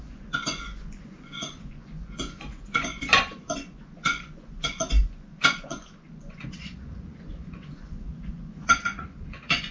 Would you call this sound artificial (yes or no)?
yes